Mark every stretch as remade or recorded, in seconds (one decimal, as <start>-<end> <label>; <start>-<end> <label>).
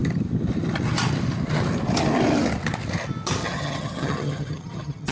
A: 0.0-3.4 recorded; 3.4-5.1 remade